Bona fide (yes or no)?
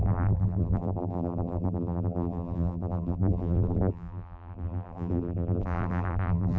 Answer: no